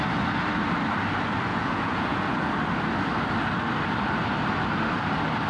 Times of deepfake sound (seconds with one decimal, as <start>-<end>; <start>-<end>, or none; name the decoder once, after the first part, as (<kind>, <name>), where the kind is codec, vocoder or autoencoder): 1.5-2.5 (vocoder, Vocos)